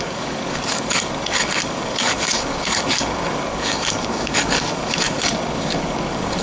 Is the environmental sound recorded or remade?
remade